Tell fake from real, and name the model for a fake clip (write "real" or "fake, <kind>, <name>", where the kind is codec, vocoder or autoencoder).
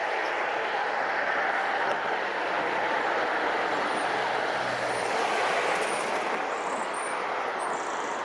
real